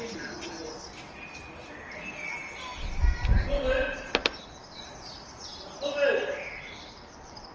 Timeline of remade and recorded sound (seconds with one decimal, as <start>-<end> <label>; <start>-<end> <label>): 0.0-2.7 recorded; 2.7-3.5 remade; 3.5-7.5 recorded